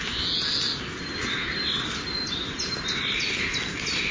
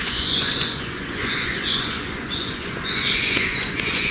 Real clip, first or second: first